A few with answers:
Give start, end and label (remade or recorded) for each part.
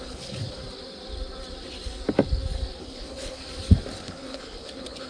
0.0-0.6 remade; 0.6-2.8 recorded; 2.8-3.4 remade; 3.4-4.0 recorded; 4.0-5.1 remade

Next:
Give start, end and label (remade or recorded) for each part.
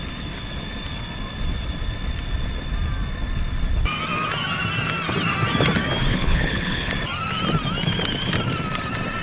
0.0-6.1 recorded; 6.1-6.9 remade; 6.9-9.2 recorded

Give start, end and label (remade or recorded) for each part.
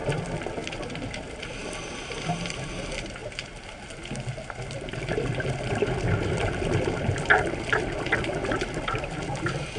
0.0-9.8 recorded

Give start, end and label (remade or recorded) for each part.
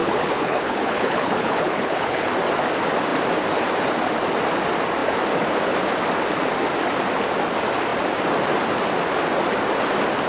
0.0-2.3 remade; 2.3-10.3 recorded